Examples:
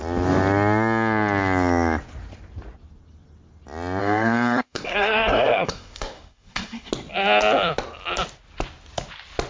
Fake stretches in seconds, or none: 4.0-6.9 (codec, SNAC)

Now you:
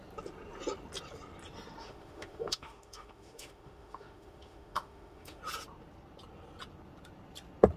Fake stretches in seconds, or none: 1.8-5.4 (autoencoder, DAC-VAE)

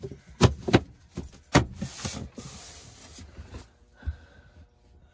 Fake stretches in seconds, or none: none

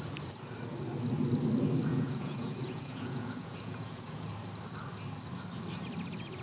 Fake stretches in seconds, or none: 1.9-4.3 (vocoder, Vocos)

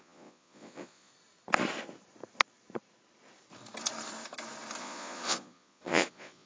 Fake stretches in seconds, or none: 0.0-1.1 (vocoder, Vocos); 4.8-6.5

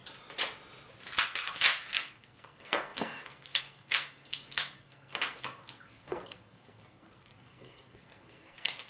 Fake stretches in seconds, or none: 1.2-8.9 (codec, SNAC)